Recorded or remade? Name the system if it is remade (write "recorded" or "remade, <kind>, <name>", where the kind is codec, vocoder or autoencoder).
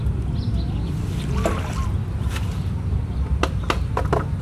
recorded